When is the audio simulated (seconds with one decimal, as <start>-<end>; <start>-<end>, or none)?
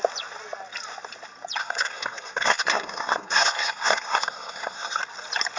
1.6-5.0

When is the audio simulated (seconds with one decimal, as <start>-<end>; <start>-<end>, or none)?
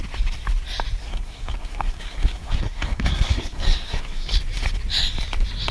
1.0-4.3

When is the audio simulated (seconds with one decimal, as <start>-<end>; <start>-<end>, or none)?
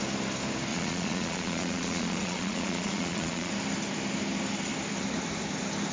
0.7-3.5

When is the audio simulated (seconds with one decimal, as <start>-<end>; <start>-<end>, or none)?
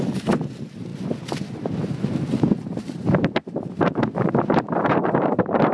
0.0-0.9; 1.4-5.7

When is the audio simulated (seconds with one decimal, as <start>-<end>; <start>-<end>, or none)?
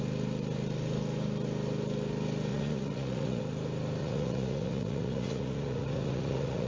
2.5-3.4; 4.0-6.7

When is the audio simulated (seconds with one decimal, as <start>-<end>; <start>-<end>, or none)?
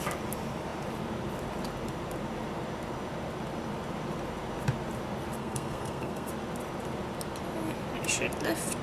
5.4-6.3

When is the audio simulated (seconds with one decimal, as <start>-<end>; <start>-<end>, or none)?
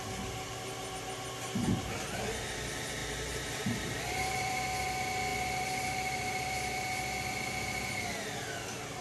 3.0-4.5; 5.3-6.7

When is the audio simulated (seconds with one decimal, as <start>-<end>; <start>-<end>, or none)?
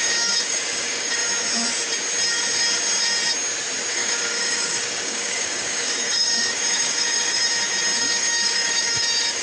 0.0-1.2; 3.9-7.4; 8.0-9.4